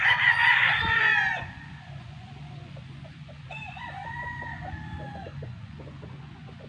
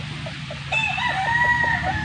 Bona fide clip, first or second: second